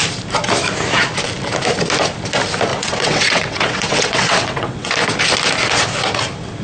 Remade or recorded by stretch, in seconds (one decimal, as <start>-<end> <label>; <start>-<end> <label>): 0.0-2.7 recorded; 2.7-4.9 remade; 4.9-6.6 recorded